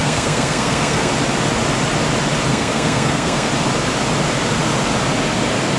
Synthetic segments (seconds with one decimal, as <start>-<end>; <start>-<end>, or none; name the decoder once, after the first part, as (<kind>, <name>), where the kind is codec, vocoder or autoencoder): 0.0-1.1 (codec, SNAC); 2.5-3.5